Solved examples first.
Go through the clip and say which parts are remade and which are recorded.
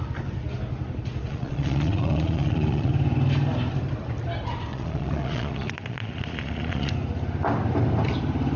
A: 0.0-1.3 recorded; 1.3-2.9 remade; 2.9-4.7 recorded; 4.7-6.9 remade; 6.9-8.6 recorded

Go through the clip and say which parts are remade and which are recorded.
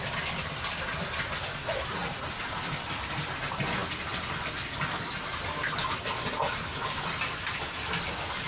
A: 0.0-8.5 recorded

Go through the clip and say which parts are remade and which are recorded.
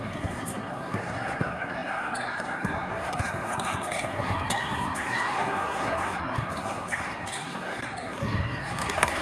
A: 0.0-9.2 remade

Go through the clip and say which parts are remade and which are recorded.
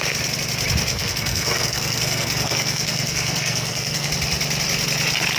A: 0.0-0.9 recorded; 0.9-4.1 remade; 4.1-5.4 recorded